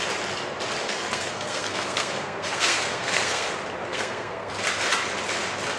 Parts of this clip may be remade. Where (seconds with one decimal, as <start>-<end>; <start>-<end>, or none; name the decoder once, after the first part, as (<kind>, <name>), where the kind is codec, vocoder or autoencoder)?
0.8-3.5 (codec, SNAC); 3.9-4.5